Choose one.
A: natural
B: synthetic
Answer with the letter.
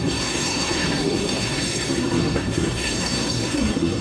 B